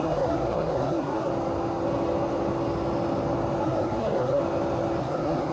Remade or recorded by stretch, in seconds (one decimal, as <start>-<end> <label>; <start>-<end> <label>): 0.0-1.3 remade; 1.3-3.6 recorded; 3.6-4.4 remade; 4.4-5.0 recorded; 5.0-5.5 remade

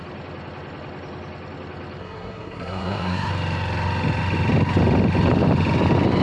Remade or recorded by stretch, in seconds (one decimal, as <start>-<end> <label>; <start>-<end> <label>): 0.0-2.0 recorded; 2.0-3.3 remade; 3.3-6.2 recorded

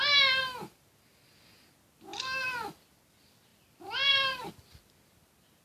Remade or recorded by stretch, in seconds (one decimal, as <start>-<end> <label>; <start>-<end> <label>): 0.0-3.5 recorded; 3.5-4.5 remade; 4.5-5.6 recorded